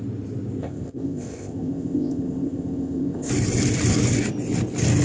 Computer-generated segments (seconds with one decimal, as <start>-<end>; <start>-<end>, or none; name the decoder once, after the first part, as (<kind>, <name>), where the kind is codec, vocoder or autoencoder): 0.6-3.3 (codec, ZipCodec)